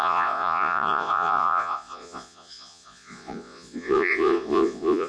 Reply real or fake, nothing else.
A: fake